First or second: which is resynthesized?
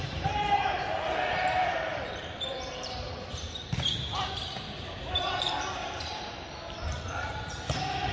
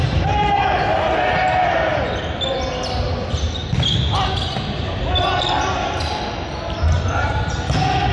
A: first